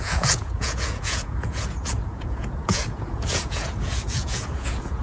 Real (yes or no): no